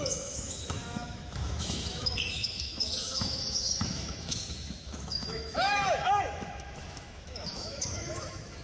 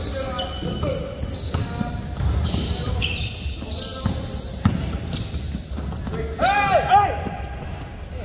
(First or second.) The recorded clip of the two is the second